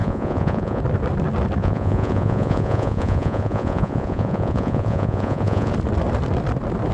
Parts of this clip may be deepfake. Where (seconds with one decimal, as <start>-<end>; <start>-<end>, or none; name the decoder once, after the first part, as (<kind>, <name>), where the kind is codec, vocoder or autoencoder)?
0.0-0.8 (vocoder, Vocos); 1.6-5.7